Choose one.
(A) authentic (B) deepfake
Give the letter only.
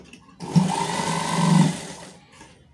A